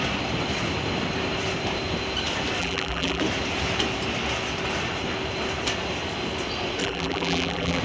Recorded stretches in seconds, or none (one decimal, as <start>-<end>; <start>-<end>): 0.0-2.6; 3.2-6.8

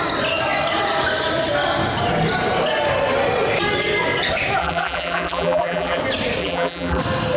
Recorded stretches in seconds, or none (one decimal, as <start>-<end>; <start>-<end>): 0.0-4.6; 6.0-6.4; 7.0-7.4